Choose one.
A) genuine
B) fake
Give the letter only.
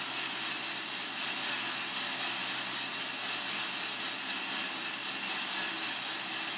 A